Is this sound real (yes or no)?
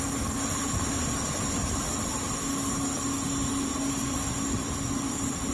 yes